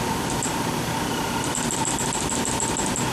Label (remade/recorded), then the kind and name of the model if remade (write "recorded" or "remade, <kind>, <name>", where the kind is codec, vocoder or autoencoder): recorded